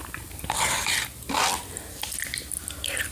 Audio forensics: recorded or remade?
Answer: recorded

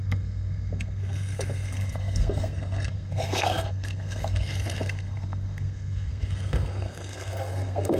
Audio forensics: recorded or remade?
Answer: remade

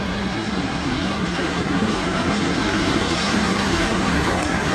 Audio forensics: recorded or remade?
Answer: remade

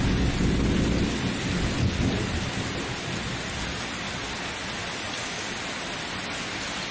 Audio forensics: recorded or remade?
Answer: recorded